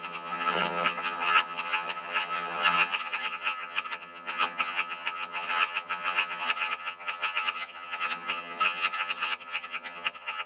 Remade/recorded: remade